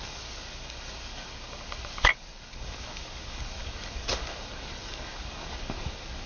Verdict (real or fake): fake